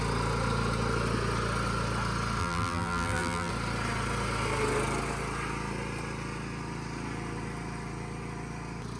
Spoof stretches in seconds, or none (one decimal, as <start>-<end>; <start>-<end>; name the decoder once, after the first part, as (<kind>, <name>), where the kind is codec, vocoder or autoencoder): 2.4-3.5 (vocoder, BigVGAN v2)